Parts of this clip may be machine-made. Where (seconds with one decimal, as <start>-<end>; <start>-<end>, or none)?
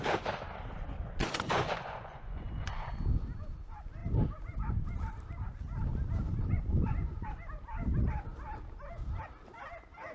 1.2-2.9; 6.3-7.3